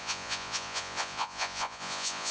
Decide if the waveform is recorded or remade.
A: remade